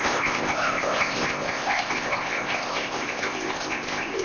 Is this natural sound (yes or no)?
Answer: no